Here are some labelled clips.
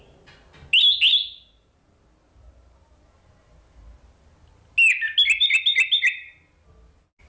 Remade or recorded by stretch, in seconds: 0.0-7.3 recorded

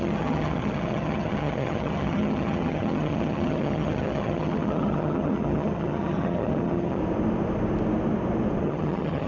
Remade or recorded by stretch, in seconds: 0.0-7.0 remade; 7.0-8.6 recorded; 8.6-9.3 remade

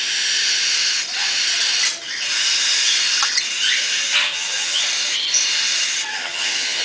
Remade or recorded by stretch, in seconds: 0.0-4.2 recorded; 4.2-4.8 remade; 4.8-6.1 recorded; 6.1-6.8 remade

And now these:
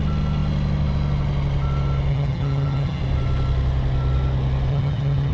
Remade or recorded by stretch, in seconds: 0.0-2.1 recorded; 2.1-3.0 remade; 3.0-4.7 recorded; 4.7-5.3 remade